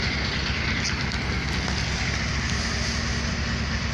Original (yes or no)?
yes